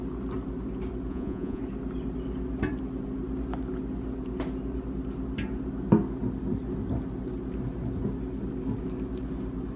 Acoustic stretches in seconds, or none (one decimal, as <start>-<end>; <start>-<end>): 0.0-1.1; 1.6-9.8